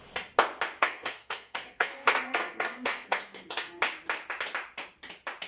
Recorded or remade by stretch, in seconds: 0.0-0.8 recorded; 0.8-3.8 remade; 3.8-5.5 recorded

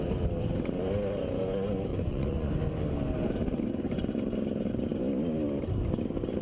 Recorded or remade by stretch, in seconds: 0.0-1.9 recorded; 1.9-2.5 remade; 2.5-6.4 recorded

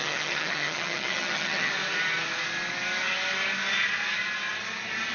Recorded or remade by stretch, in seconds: 0.0-1.7 remade; 1.7-5.1 recorded

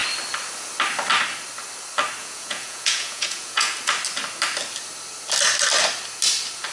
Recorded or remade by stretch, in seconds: 0.0-2.2 recorded; 2.2-3.7 remade; 3.7-6.7 recorded